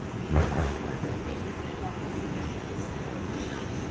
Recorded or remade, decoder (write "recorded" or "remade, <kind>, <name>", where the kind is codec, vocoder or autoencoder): remade, vocoder, Vocos